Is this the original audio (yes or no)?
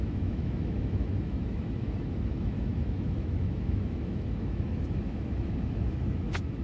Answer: no